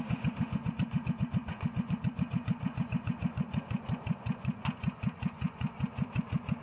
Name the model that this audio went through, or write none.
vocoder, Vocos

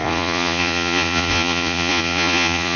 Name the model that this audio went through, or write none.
vocoder, Vocos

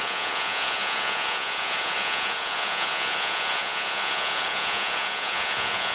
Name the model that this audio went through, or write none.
vocoder, Vocos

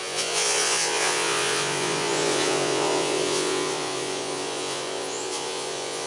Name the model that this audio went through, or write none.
vocoder, Vocos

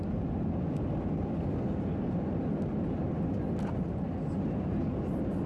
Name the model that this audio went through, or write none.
none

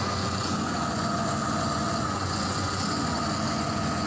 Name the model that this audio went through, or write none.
vocoder, Vocos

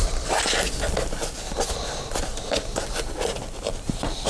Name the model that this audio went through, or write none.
none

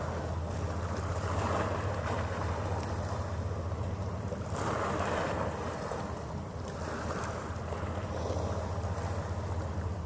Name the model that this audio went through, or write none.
none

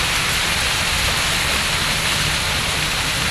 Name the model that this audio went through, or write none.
none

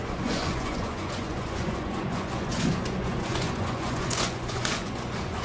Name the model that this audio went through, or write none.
vocoder, Vocos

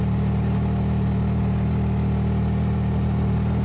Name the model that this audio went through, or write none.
none